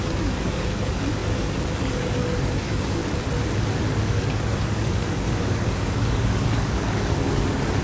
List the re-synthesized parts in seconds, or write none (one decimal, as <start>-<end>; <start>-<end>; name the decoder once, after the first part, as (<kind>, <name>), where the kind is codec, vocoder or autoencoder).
0.0-3.0 (codec, DAC); 4.0-7.8